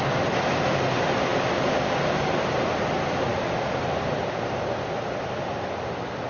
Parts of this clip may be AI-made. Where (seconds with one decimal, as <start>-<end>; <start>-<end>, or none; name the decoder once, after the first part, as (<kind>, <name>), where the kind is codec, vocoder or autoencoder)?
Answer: none